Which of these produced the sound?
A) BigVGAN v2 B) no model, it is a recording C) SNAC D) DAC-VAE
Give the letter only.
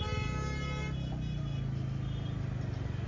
B